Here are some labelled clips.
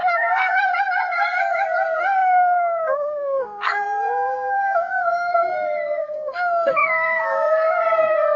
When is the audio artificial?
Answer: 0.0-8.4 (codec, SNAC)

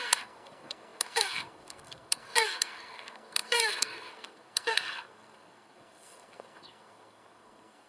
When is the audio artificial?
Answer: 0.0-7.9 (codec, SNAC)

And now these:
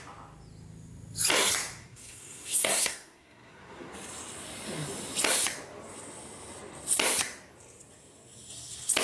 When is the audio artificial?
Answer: 1.8-3.9 (codec, SNAC)